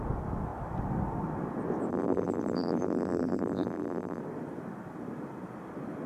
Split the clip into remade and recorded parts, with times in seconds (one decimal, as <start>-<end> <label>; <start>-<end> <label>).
0.0-1.9 recorded; 1.9-4.2 remade; 4.2-6.1 recorded